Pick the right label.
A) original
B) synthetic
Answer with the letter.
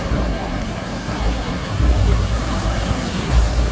B